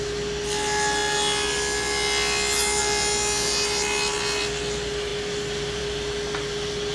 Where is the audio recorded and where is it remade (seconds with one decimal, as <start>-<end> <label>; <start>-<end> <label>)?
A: 0.0-6.9 recorded

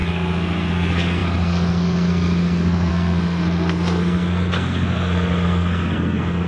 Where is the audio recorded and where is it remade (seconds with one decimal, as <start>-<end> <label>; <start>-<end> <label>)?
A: 0.0-6.5 remade

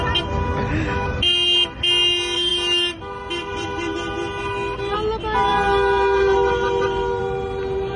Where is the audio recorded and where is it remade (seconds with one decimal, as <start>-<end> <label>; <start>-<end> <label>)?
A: 0.0-8.0 recorded

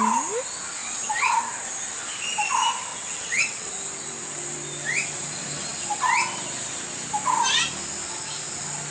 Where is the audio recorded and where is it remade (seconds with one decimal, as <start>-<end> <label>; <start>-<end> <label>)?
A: 0.0-2.9 recorded; 2.9-3.7 remade; 3.7-8.9 recorded